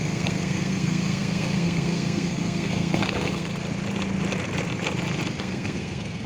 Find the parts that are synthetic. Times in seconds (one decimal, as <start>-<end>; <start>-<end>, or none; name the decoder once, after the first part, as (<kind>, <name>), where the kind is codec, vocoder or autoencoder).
0.0-3.5 (codec, SNAC); 5.4-6.3